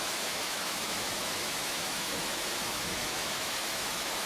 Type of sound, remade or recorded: remade